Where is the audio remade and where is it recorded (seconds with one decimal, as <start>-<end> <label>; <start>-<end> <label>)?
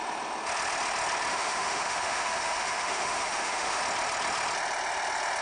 0.0-1.3 recorded; 1.3-3.8 remade; 3.8-5.4 recorded